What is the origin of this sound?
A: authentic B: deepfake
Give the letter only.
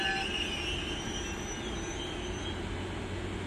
A